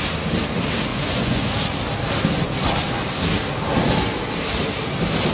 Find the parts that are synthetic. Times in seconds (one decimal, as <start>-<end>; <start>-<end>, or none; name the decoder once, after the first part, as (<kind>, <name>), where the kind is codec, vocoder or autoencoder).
0.9-1.5 (vocoder, Vocos)